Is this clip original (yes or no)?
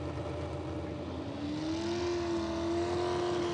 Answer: yes